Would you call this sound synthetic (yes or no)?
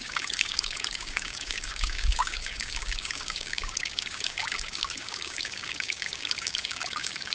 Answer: yes